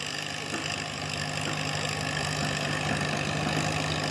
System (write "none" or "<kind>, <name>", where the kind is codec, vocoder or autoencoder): none